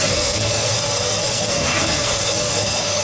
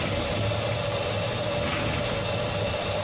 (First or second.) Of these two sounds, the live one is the second